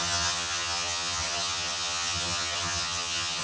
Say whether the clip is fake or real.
fake